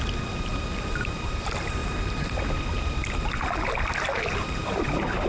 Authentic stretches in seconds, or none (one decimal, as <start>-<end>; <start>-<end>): 1.8-4.4